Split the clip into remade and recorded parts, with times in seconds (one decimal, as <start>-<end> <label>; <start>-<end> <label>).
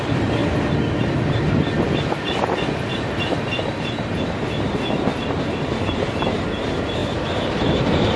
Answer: 0.0-0.4 remade; 0.4-2.9 recorded; 2.9-8.2 remade